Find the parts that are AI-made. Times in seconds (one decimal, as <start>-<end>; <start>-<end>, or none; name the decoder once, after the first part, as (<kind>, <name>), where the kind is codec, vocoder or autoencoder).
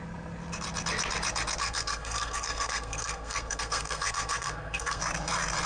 1.6-5.0 (codec, SNAC)